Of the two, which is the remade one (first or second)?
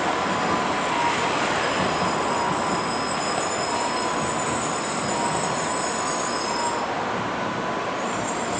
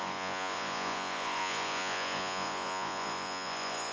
second